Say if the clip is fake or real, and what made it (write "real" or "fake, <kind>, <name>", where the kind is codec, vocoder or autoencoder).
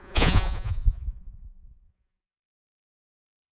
fake, vocoder, Vocos